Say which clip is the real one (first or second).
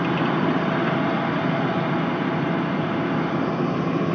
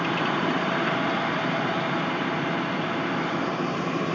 first